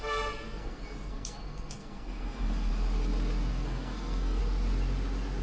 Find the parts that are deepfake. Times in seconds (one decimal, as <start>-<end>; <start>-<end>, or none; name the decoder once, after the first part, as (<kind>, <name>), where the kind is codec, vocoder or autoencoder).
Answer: 0.0-2.7 (codec, SNAC); 3.5-4.4